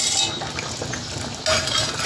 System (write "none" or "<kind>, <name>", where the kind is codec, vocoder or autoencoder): none